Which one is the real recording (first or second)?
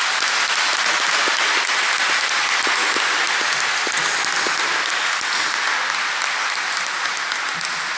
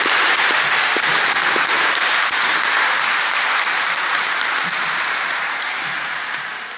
first